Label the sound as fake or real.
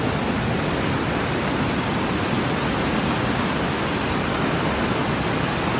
real